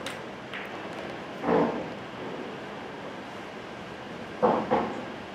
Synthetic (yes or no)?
no